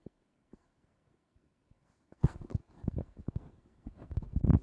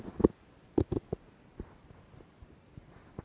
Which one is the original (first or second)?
second